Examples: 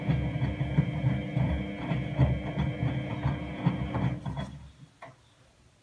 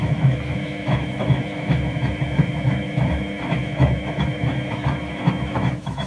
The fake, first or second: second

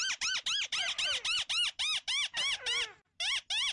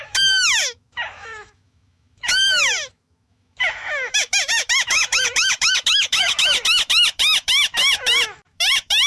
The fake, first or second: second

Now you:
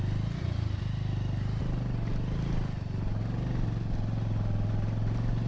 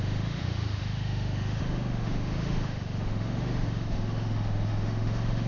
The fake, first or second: second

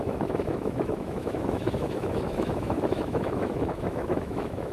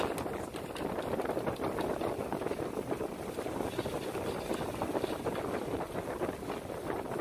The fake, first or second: first